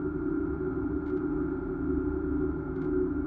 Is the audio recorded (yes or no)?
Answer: yes